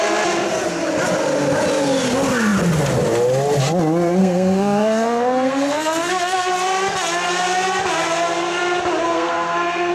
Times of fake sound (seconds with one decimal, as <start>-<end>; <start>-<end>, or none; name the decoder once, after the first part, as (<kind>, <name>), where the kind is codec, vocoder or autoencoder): 4.2-6.5 (codec, SNAC); 9.0-9.9